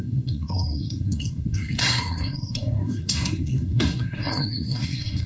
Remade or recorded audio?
remade